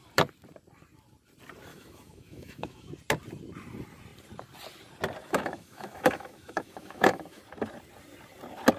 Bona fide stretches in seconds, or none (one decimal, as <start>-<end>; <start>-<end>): 0.0-1.7; 2.9-5.2; 7.4-8.8